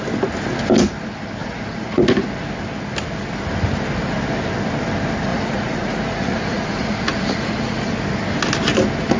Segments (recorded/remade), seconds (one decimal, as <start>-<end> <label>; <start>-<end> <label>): 0.0-1.4 recorded; 1.4-2.0 remade; 2.0-5.3 recorded; 5.3-7.8 remade; 7.8-9.2 recorded